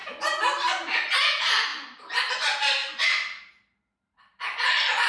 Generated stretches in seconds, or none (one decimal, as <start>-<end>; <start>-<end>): 0.7-2.8; 3.4-5.1